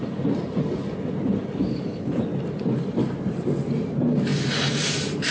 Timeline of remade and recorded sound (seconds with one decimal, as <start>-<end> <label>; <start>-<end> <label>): 0.0-1.7 recorded; 1.7-2.2 remade; 2.2-5.3 recorded